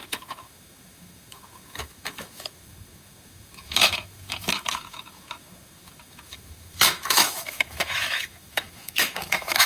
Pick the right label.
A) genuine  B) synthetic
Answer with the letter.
B